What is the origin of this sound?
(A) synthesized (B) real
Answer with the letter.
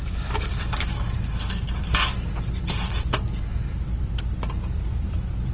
B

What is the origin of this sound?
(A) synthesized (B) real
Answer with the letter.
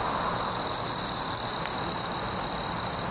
B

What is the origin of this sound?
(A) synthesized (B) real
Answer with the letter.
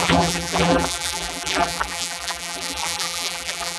A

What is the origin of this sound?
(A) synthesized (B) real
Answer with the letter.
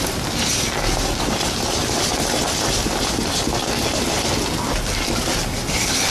B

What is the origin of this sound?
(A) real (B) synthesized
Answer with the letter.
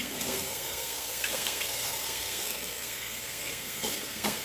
B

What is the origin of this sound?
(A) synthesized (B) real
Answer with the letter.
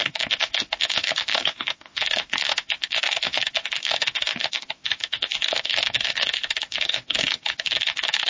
A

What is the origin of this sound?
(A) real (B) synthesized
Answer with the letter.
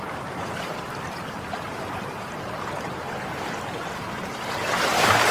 B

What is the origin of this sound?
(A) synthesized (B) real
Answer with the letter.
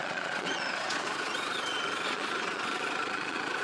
A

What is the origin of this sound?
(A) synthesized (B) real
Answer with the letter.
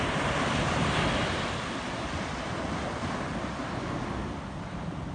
B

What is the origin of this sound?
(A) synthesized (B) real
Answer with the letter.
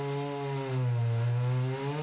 B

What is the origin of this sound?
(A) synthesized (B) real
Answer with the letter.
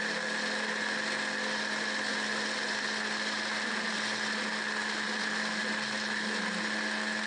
B